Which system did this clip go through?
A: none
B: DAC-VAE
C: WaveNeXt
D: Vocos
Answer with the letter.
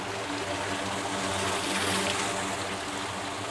A